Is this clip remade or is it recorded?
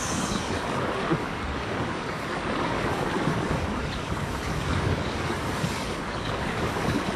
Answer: remade